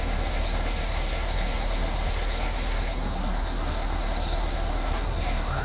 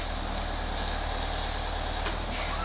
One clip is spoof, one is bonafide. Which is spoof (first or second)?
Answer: first